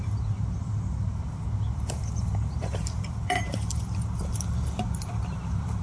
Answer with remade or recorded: remade